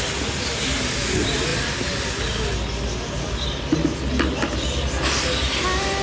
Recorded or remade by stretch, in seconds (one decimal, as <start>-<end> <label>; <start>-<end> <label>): 0.0-6.0 recorded